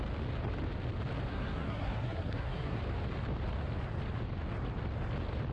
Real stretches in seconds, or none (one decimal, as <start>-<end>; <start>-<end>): 0.0-1.3; 2.8-5.5